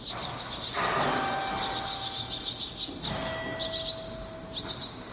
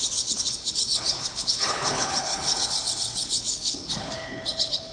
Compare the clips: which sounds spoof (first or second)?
second